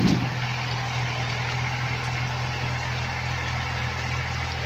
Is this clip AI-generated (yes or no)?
no